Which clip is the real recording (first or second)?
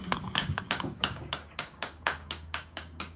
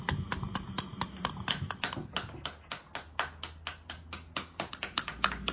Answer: second